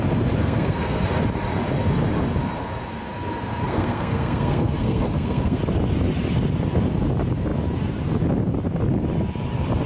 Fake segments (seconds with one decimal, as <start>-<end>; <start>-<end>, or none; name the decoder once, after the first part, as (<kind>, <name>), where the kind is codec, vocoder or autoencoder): 0.4-1.0 (codec, SNAC); 3.6-5.6